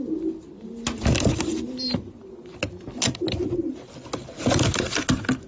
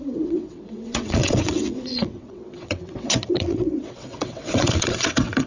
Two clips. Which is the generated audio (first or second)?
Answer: second